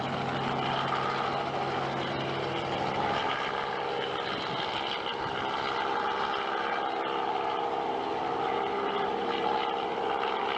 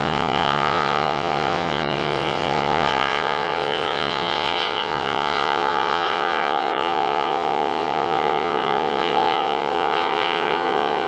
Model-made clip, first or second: second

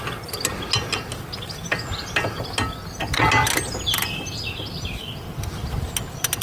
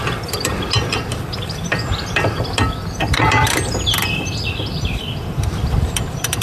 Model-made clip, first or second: second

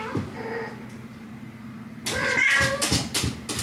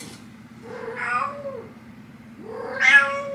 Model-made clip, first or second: second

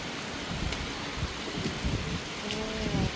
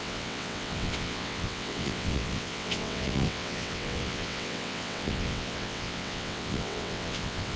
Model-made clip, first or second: second